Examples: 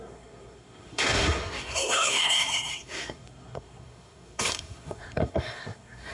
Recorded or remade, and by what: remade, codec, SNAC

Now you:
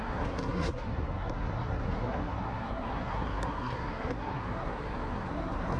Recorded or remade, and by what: remade, codec, SNAC